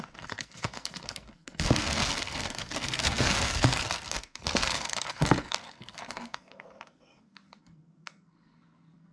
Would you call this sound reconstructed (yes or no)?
yes